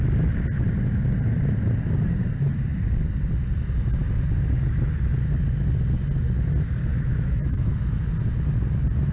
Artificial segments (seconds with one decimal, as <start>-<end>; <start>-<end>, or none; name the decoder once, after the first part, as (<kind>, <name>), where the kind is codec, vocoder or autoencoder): 6.9-8.1 (autoencoder, DAC-VAE)